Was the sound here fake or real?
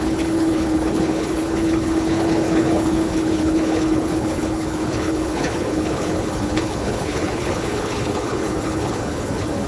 fake